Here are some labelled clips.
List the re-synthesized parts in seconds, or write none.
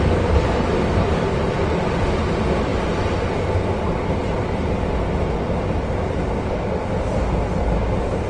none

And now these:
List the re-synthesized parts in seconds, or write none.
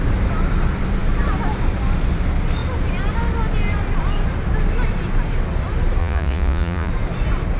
6.0-6.9 (vocoder, Vocos)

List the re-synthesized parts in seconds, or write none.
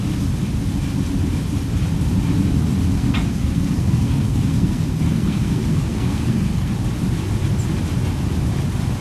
2.9-6.7 (codec, SNAC)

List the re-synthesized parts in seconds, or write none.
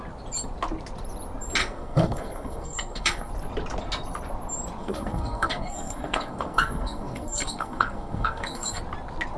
1.6-3.3 (codec, SNAC); 4.8-8.8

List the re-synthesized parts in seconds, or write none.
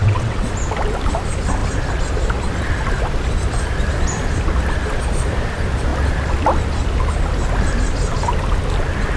0.0-0.5 (vocoder, WaveNeXt)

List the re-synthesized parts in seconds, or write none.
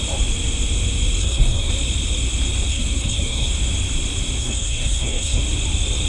1.2-1.7 (codec, SNAC); 2.7-3.5; 4.4-5.4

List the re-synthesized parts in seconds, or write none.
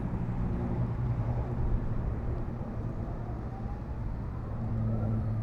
0.0-3.2 (vocoder, BigVGAN v2); 4.0-5.4